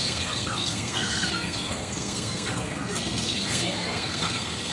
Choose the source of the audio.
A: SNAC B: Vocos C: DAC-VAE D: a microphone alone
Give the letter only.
A